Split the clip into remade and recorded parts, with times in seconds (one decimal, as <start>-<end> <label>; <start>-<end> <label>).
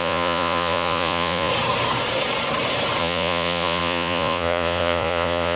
0.0-1.5 remade; 1.5-3.0 recorded; 3.0-5.6 remade